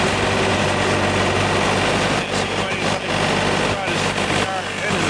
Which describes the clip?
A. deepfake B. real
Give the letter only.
B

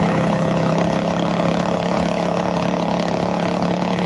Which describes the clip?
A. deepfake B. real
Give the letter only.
A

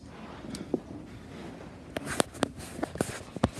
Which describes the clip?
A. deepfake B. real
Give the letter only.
B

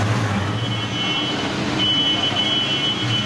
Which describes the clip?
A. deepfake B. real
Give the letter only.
B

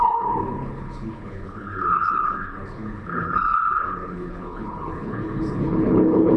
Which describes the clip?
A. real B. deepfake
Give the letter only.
B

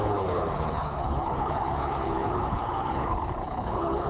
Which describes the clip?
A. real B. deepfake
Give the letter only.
B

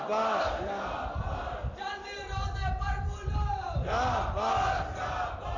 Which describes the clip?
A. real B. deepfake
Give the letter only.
A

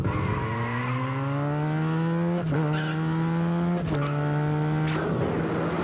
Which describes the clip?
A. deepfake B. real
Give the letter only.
B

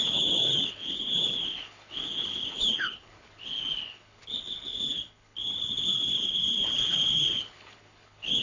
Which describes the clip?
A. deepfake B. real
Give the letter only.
A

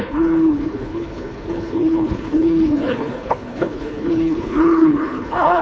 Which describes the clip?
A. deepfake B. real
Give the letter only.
A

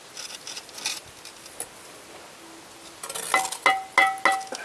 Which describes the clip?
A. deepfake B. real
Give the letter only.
B